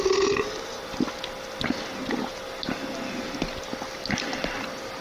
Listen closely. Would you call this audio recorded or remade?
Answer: recorded